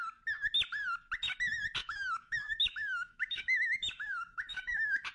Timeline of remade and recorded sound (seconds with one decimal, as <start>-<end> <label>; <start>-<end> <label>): 0.0-1.8 recorded; 1.8-5.1 remade